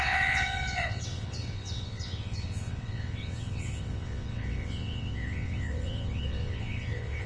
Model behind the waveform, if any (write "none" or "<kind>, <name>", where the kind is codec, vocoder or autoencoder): vocoder, WaveNeXt